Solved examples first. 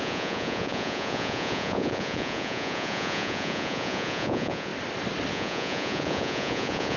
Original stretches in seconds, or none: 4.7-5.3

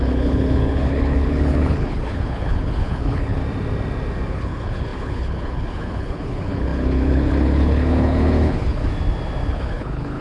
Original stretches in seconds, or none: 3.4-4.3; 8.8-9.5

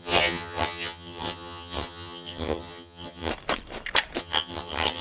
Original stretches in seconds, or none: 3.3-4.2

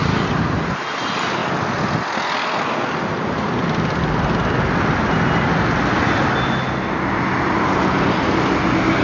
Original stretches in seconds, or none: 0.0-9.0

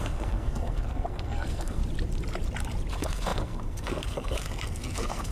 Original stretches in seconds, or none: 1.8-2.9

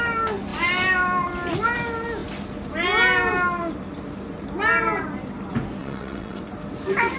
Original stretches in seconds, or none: 0.0-5.8; 6.4-7.2

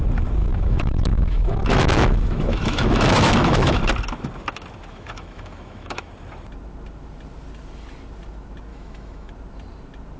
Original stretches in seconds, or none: 0.0-0.4; 3.8-4.9; 6.1-8.7; 9.3-10.2

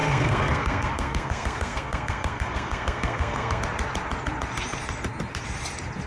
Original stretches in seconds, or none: 3.6-6.1